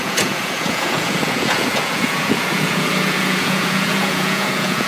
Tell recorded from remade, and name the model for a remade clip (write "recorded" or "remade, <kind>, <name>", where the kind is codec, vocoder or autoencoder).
remade, vocoder, Vocos